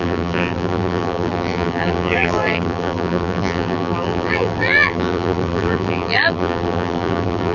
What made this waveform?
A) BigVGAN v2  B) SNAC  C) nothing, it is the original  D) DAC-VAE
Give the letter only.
A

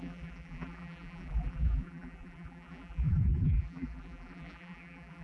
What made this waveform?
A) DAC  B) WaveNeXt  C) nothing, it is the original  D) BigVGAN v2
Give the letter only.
D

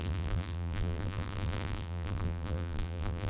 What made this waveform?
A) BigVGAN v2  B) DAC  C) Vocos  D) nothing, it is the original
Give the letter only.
A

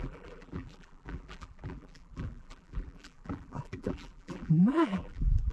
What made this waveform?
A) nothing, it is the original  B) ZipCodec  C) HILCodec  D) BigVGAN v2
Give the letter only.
D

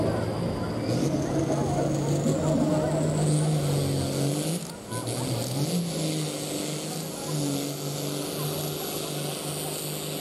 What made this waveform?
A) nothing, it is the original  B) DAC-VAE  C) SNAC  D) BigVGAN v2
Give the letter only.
A